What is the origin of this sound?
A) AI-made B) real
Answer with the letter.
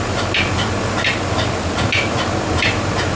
B